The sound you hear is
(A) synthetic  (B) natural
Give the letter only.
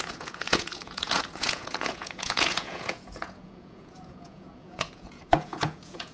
A